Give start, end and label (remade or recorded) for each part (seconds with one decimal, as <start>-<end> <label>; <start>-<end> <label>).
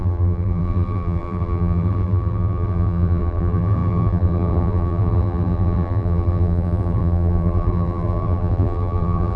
0.0-9.4 remade